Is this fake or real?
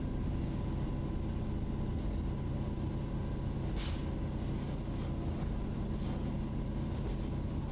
real